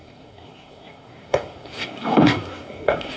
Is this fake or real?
fake